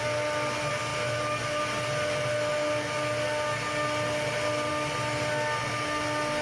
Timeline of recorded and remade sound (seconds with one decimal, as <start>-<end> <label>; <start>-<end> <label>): 0.0-6.4 recorded

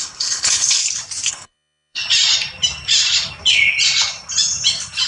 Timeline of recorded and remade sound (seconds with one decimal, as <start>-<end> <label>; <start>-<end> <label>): 0.0-0.8 remade; 0.8-1.3 recorded; 1.3-2.0 remade; 2.0-5.1 recorded

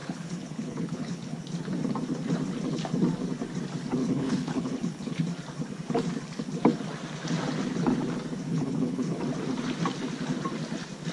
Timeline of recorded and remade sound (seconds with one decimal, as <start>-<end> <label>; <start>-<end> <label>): 0.0-1.4 remade; 1.4-4.0 recorded; 4.0-5.2 remade; 5.2-8.5 recorded; 8.5-9.2 remade; 9.2-11.1 recorded

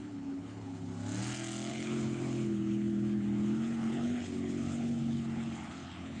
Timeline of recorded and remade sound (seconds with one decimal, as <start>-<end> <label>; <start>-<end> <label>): 0.0-0.9 remade; 0.9-1.7 recorded; 1.7-6.2 remade